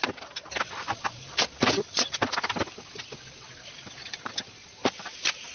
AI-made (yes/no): no